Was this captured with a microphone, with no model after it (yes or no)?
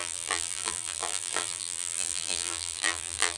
no